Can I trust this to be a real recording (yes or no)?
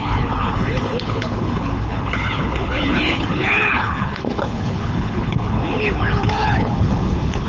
no